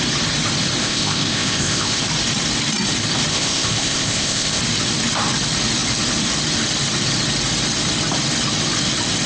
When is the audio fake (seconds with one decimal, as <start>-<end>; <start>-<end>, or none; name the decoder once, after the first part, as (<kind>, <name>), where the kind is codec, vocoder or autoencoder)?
0.8-2.0 (codec, ZipCodec); 3.3-4.6